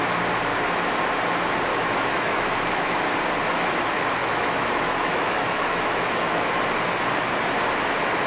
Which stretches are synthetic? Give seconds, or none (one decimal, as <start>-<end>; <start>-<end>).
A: 1.7-3.0; 4.2-6.5